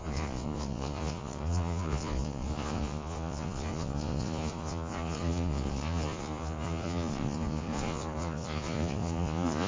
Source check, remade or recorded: remade